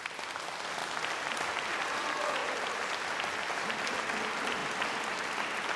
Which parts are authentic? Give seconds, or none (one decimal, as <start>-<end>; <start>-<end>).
0.0-4.6; 5.1-5.8